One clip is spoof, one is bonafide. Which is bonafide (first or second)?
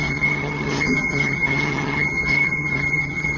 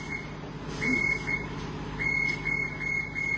second